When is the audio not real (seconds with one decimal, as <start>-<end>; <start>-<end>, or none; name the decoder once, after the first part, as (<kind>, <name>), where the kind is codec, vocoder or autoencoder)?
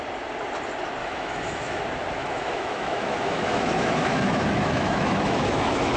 1.0-1.8 (autoencoder, DAC-VAE); 2.2-6.0